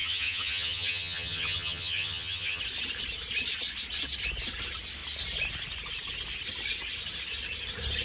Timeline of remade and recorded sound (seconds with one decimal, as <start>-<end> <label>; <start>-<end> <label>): 0.0-2.6 remade; 2.6-8.0 recorded